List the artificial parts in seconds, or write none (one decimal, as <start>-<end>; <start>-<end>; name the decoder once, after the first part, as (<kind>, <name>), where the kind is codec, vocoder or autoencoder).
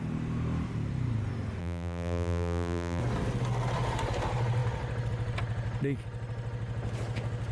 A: 1.6-3.0 (vocoder, BigVGAN v2)